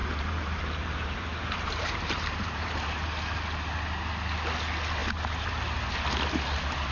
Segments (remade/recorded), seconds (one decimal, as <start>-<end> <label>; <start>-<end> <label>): 0.0-2.9 remade; 2.9-6.9 recorded

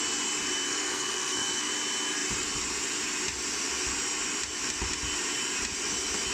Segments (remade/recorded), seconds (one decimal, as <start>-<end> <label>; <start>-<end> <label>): 0.0-0.7 recorded; 0.7-1.7 remade; 1.7-6.3 recorded

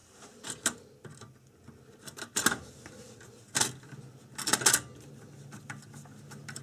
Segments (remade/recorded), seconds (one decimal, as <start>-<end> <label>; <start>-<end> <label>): 0.0-6.6 recorded